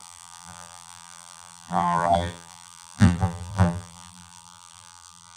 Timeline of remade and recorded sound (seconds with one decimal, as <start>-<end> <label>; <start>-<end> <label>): 0.0-5.4 remade